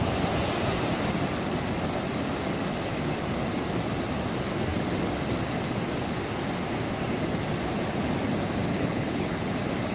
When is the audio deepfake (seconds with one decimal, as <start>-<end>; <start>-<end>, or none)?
8.7-9.5